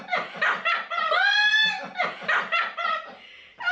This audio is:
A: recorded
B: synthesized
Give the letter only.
A